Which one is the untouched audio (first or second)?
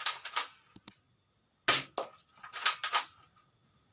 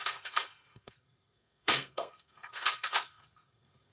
first